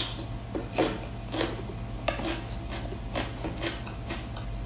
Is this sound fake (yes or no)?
no